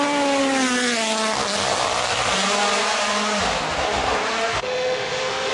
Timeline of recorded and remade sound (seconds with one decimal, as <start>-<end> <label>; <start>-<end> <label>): 0.0-4.5 recorded; 4.5-5.5 remade